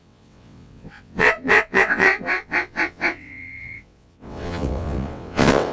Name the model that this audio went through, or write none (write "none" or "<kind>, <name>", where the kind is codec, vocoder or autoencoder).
vocoder, WaveNeXt